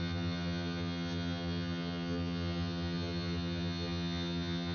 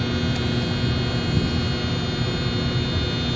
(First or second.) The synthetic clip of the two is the first